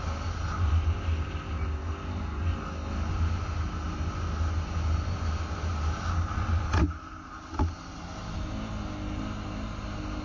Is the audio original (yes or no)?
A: yes